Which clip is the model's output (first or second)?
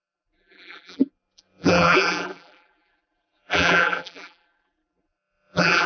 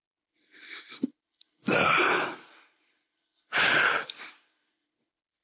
first